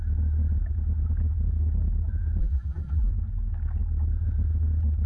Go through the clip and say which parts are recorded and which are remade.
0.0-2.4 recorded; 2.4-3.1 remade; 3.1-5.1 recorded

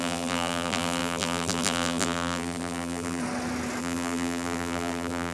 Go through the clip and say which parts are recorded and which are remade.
0.0-3.2 remade; 3.2-3.8 recorded; 3.8-5.3 remade

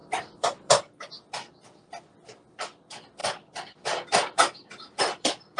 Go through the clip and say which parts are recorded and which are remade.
0.0-0.7 remade; 0.7-3.2 recorded; 3.2-5.6 remade

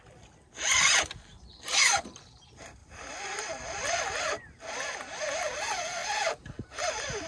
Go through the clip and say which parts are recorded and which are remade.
0.0-7.3 recorded